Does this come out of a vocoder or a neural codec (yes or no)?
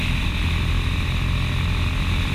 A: no